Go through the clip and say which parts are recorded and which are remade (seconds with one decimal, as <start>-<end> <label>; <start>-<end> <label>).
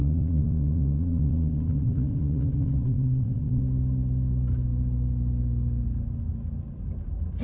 0.0-3.6 remade; 3.6-7.4 recorded